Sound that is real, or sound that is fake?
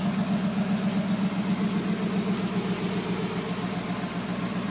real